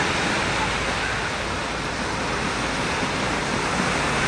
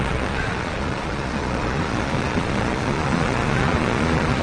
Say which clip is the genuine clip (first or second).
first